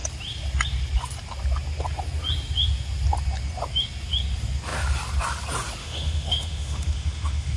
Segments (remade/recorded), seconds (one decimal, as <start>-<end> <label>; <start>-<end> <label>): 0.0-5.8 recorded; 5.8-7.6 remade